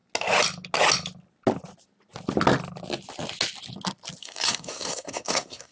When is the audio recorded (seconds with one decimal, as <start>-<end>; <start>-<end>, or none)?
0.0-4.2